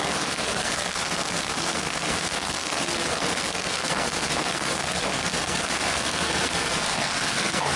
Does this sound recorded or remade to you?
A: remade